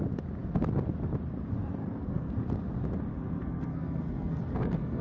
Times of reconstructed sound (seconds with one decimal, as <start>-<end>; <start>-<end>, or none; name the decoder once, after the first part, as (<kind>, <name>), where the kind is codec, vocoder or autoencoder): 1.8-2.3 (codec, SNAC); 3.1-5.0